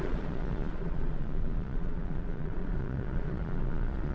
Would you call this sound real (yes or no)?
no